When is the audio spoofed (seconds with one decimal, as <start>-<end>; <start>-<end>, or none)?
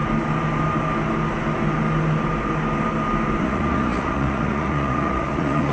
3.4-5.7